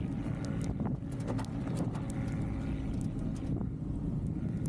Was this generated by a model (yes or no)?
no